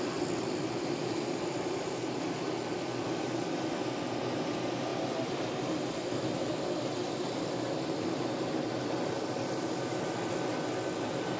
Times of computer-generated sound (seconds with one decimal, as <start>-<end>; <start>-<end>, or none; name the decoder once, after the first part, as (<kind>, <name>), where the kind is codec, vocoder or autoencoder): none